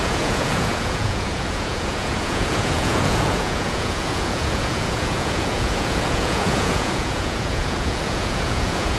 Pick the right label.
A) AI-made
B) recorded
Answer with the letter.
A